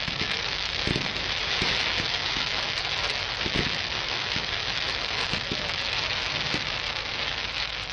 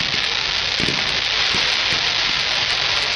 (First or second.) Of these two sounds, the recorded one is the second